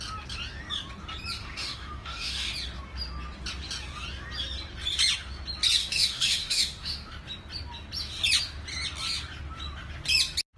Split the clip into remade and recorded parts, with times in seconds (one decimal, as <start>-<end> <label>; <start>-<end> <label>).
0.0-1.4 recorded; 1.4-2.5 remade; 2.5-5.8 recorded; 5.8-7.1 remade; 7.1-10.6 recorded